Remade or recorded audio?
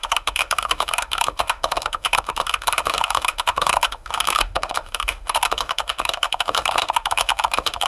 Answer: remade